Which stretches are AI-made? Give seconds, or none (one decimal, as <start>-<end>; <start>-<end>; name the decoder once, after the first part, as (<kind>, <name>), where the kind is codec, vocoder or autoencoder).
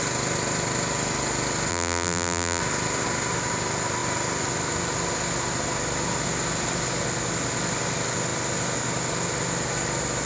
1.7-2.6 (vocoder, BigVGAN v2)